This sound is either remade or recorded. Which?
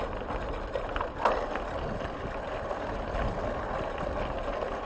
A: recorded